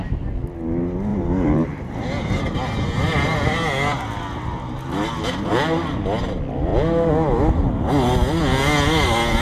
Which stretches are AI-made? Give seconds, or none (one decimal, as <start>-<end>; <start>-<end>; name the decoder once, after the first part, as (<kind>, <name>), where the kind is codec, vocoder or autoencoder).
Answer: 1.1-1.9 (vocoder, BigVGAN v2)